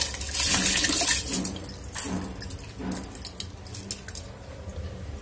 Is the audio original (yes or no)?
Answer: yes